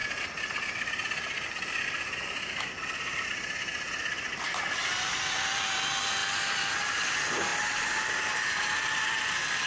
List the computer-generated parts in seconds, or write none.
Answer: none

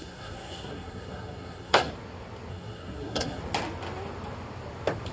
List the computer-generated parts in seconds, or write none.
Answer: 0.0-1.9 (codec, SNAC); 2.5-3.4

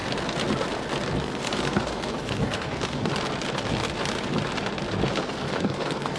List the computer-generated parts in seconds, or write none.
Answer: 1.2-3.1 (codec, SNAC); 5.1-6.2

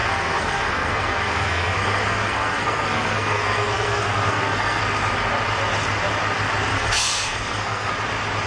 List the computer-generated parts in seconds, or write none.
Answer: 0.0-4.8 (codec, SNAC); 6.7-7.9

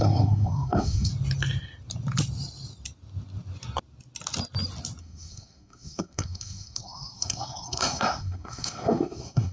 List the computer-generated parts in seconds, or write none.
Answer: 0.0-1.1 (codec, SNAC); 5.0-9.5